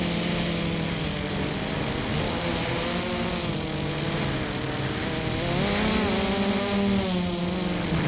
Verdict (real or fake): real